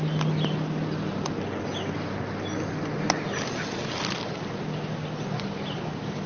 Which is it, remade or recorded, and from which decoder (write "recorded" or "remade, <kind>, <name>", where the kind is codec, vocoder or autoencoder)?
recorded